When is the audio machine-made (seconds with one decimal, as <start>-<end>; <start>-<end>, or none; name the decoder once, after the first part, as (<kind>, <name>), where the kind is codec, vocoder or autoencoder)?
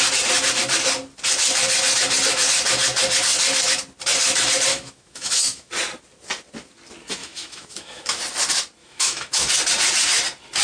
4.7-5.7 (autoencoder, DAC-VAE); 7.2-8.2; 8.8-9.5